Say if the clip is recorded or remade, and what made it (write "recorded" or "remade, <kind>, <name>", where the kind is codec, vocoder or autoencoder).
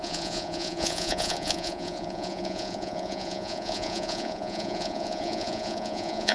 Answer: remade, vocoder, Vocos